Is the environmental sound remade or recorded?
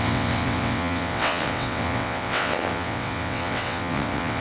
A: remade